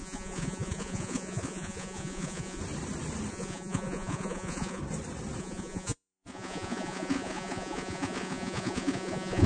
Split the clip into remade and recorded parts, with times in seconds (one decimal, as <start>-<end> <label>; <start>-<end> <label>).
0.0-2.6 remade; 2.6-3.3 recorded; 3.3-4.8 remade; 4.8-5.4 recorded; 5.4-9.5 remade